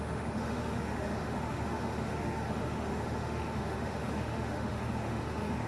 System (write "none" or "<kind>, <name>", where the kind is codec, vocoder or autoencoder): autoencoder, DAC-VAE